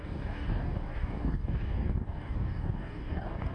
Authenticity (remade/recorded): remade